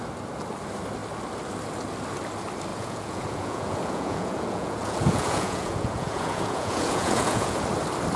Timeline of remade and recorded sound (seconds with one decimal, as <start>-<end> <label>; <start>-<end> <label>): 0.0-2.7 recorded; 2.7-7.6 remade; 7.6-8.2 recorded